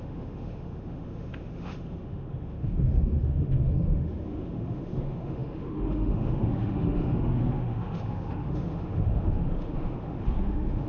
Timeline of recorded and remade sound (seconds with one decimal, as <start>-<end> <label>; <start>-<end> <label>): 0.0-10.9 remade